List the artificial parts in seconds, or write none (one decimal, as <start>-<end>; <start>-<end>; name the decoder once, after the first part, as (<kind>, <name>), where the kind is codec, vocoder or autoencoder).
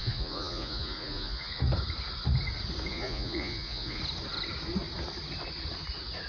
0.0-1.6 (vocoder, Vocos); 2.9-4.0